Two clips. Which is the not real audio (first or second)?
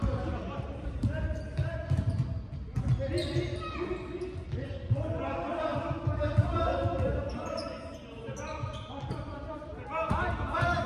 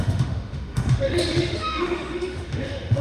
second